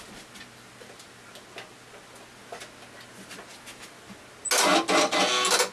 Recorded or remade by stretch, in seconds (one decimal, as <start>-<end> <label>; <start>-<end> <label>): 0.0-5.7 recorded